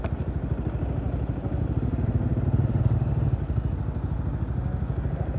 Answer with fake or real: real